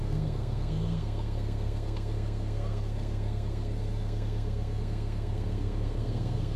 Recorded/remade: remade